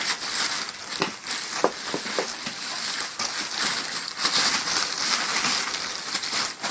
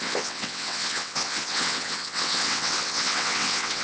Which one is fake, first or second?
second